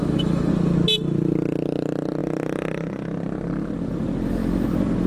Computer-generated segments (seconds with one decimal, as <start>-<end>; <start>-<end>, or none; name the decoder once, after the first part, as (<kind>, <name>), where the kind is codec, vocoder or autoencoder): 0.0-0.5 (autoencoder, DAC-VAE)